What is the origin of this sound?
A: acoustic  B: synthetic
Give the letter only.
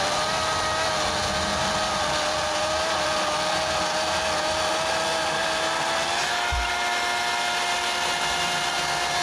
A